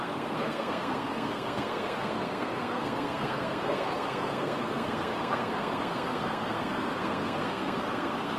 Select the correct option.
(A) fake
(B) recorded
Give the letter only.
A